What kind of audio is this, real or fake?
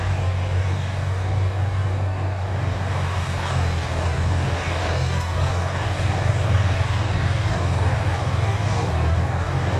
fake